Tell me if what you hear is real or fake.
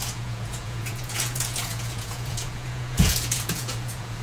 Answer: fake